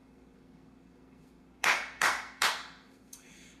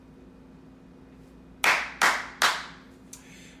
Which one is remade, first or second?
first